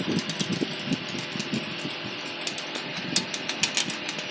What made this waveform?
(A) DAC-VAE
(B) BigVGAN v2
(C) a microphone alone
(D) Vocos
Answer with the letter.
C